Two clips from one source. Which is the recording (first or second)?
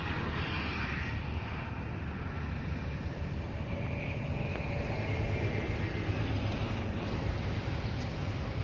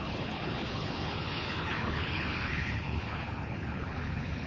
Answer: first